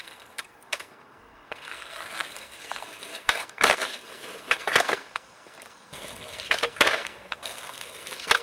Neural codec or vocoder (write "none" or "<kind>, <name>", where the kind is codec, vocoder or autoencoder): codec, SNAC